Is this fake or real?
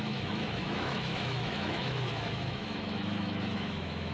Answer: fake